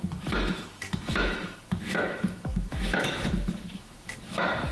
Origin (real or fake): fake